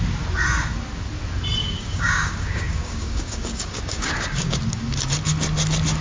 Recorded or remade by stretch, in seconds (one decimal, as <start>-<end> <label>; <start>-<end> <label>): 0.0-1.6 recorded; 1.6-4.6 remade; 4.6-6.0 recorded